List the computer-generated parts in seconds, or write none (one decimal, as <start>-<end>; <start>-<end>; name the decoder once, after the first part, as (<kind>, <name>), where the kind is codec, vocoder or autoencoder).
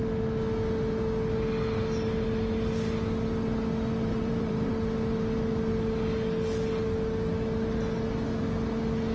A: 4.1-4.7 (vocoder, BigVGAN v2)